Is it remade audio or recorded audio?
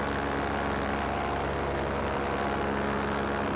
recorded